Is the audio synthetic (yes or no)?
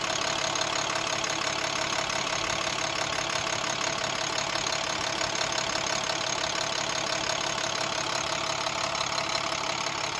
no